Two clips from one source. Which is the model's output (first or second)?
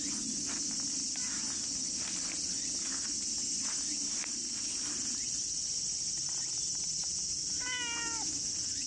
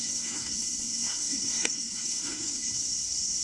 second